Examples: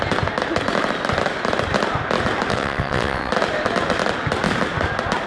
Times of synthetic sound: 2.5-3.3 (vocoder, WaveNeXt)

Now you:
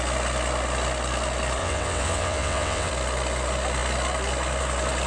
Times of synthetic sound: 1.6-2.9 (vocoder, WaveNeXt)